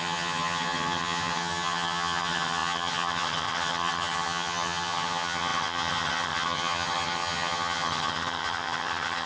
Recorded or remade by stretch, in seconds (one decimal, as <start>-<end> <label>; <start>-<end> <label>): 0.0-9.3 remade